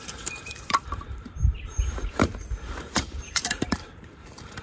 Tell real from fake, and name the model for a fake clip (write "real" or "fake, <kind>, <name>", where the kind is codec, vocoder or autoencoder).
fake, vocoder, BigVGAN v2